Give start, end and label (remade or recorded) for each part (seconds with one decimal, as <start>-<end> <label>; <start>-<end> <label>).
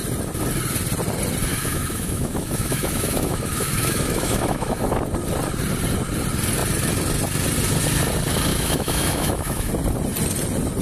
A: 0.0-1.5 recorded; 1.5-5.0 remade; 5.0-8.5 recorded; 8.5-9.7 remade; 9.7-10.8 recorded